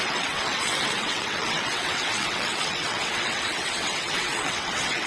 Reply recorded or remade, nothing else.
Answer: remade